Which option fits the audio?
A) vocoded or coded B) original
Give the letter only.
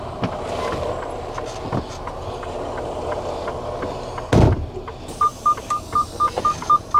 B